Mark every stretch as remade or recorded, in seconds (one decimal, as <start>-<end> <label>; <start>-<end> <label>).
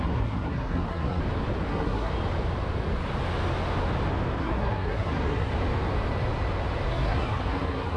0.0-1.2 remade; 1.2-1.7 recorded; 1.7-2.1 remade; 2.1-4.4 recorded; 4.4-5.5 remade; 5.5-6.9 recorded; 6.9-8.0 remade